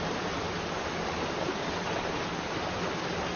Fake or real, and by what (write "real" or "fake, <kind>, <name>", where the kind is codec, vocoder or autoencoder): real